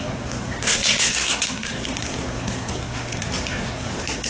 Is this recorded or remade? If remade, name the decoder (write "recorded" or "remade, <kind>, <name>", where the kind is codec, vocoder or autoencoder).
remade, codec, SNAC